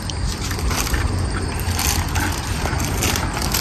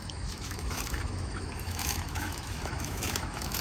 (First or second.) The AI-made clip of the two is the second